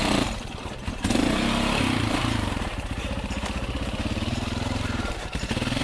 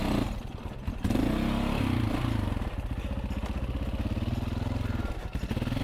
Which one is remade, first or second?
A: first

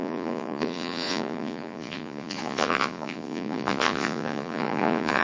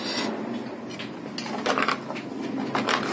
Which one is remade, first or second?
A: first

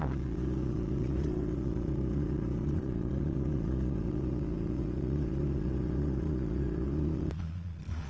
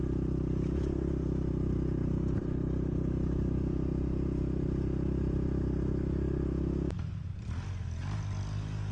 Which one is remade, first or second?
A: first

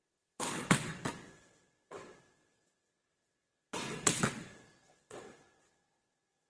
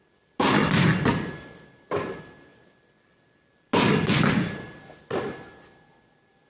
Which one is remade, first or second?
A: first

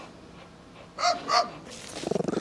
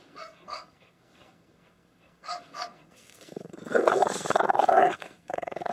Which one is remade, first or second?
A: second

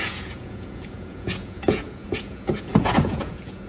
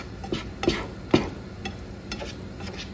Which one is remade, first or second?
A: first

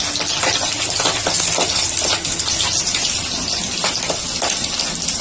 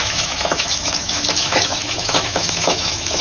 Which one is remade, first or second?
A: second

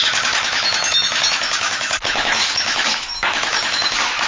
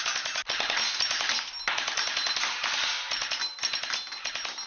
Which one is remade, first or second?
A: first